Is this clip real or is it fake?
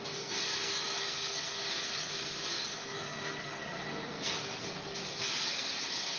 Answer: fake